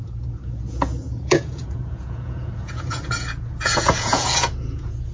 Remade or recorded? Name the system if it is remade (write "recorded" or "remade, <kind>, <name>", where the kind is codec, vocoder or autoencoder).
remade, vocoder, Vocos